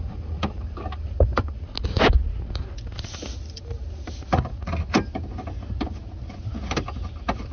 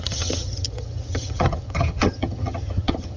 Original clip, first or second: first